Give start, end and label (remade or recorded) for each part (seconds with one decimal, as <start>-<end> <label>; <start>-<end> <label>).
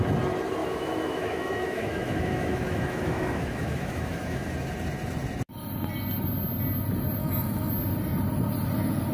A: 0.0-0.6 recorded; 0.6-4.5 remade; 4.5-7.2 recorded; 7.2-7.7 remade; 7.7-9.1 recorded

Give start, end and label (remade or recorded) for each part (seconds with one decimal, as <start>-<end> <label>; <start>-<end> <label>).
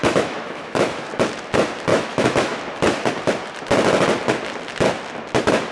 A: 0.0-1.1 remade; 1.1-1.9 recorded; 1.9-2.6 remade; 2.6-5.7 recorded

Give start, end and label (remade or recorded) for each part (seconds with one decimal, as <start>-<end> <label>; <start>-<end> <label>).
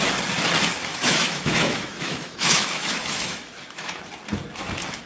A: 0.0-0.9 recorded; 0.9-4.0 remade; 4.0-5.1 recorded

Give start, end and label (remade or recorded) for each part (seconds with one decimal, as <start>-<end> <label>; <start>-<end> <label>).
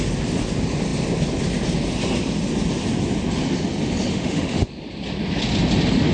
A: 0.0-4.1 recorded; 4.1-4.7 remade; 4.7-6.1 recorded